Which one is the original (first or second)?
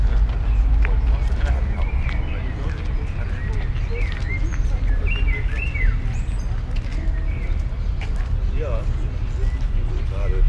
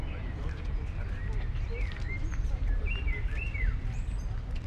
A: first